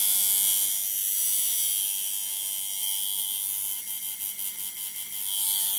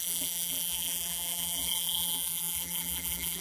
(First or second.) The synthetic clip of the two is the second